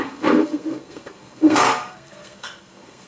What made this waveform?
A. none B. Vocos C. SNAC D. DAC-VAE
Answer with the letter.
C